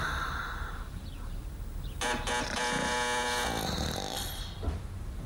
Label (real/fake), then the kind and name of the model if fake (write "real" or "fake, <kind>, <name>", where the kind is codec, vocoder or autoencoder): real